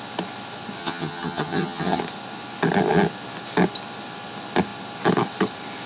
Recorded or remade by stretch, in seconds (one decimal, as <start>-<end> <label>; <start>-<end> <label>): 0.0-0.8 recorded; 0.8-2.0 remade; 2.0-5.9 recorded

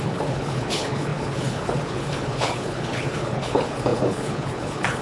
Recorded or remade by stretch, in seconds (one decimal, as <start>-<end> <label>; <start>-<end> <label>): 0.0-5.0 remade

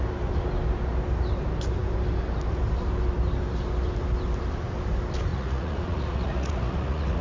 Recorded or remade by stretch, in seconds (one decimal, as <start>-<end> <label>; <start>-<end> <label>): 0.0-5.3 recorded; 5.3-7.2 remade

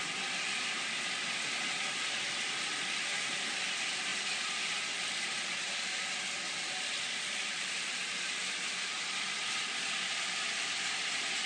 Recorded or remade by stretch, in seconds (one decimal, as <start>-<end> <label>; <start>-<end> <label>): 0.0-11.5 recorded

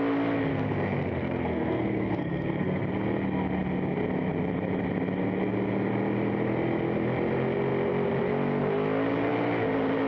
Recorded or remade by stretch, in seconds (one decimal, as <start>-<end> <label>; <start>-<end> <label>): 0.0-0.5 recorded; 0.5-2.8 remade; 2.8-10.1 recorded

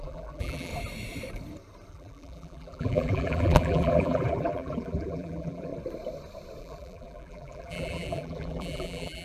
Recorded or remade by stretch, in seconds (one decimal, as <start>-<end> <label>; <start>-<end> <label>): 0.0-0.7 remade; 0.7-1.9 recorded; 1.9-5.7 remade; 5.7-6.6 recorded; 6.6-9.2 remade

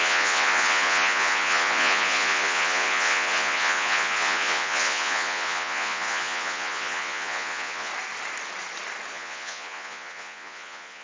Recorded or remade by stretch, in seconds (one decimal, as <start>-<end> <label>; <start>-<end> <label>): 0.0-7.9 remade; 7.9-9.1 recorded; 9.1-11.0 remade

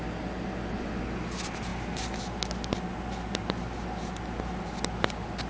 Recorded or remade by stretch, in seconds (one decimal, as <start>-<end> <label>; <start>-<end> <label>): 0.0-5.5 recorded